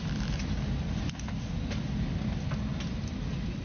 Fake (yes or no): no